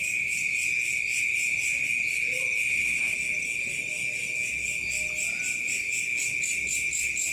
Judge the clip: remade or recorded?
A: recorded